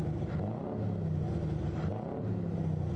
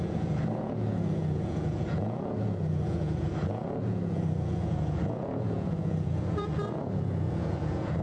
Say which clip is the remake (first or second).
second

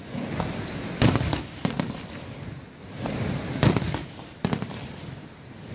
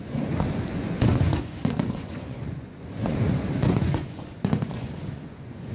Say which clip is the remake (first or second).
second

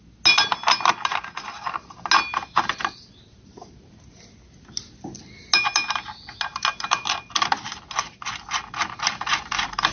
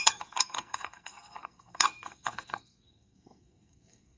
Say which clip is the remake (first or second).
second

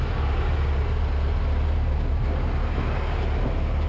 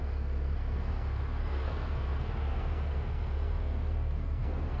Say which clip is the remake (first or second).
second